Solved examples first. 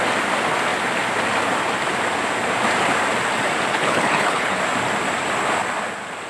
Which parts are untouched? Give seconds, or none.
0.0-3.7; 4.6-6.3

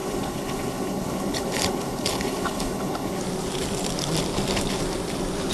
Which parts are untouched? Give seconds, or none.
3.2-5.5

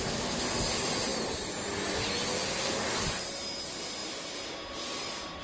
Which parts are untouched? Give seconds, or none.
0.0-5.4

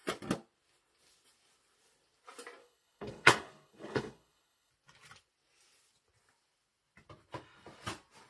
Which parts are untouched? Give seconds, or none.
0.0-2.6; 4.7-8.3

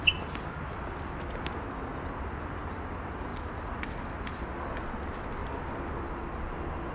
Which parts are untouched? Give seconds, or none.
0.0-6.9

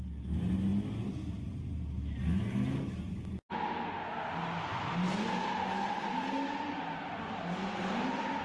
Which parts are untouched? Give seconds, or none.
0.0-8.4